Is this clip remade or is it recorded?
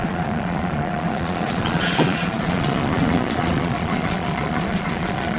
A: remade